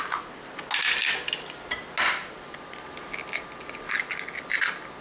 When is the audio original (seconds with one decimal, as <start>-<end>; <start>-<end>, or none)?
0.0-5.0